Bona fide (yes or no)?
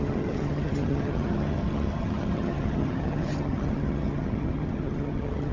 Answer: no